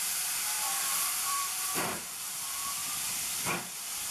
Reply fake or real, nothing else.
fake